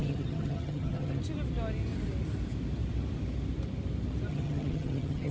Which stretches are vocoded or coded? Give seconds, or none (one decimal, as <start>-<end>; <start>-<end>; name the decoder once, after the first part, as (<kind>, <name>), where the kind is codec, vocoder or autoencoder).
0.0-1.2 (vocoder, HiFi-GAN); 4.3-5.3